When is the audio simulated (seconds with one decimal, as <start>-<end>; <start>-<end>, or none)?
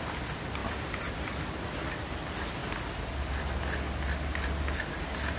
none